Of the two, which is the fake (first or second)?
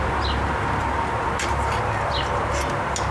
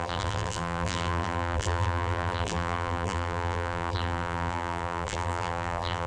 second